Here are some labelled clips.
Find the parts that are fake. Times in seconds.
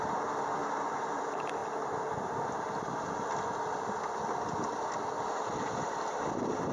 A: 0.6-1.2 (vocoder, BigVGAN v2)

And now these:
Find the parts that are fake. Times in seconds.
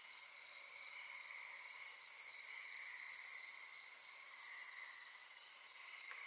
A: 5.2-5.8 (vocoder, Vocos)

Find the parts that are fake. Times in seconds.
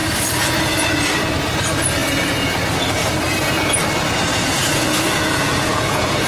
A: 4.3-6.3 (vocoder, Vocos)